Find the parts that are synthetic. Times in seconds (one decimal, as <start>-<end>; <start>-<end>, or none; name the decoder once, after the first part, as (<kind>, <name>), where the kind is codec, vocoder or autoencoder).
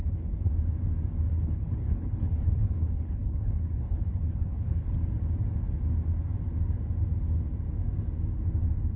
0.0-0.5 (codec, HILCodec); 1.3-4.9